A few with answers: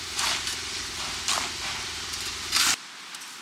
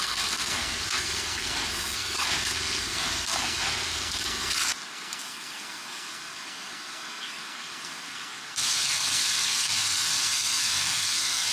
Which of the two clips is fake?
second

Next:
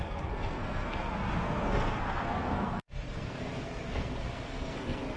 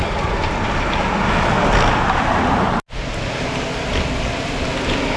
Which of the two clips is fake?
first